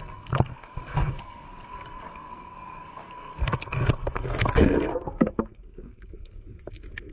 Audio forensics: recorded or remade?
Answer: remade